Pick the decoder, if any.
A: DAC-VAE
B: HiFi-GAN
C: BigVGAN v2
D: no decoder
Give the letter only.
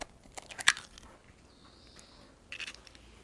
D